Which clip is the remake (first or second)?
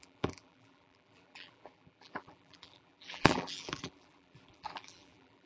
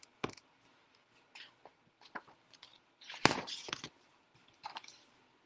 first